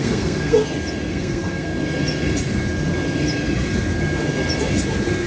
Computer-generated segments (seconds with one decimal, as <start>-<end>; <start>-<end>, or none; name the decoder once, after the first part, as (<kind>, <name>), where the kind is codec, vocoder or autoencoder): 0.0-0.6 (codec, SNAC); 1.1-1.7